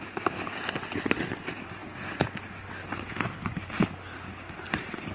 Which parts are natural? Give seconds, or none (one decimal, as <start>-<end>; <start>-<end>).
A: 0.0-5.1